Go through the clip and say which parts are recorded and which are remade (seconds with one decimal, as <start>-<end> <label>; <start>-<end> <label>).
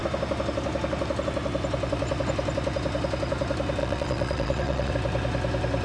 0.0-3.8 recorded; 3.8-4.9 remade; 4.9-5.8 recorded